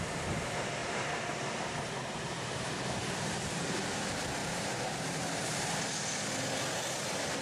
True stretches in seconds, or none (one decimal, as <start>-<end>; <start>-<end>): 0.0-0.8; 4.0-4.4; 5.8-7.4